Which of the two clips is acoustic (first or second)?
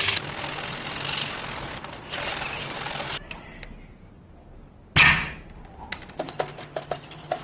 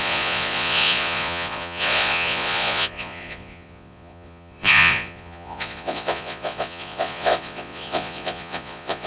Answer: first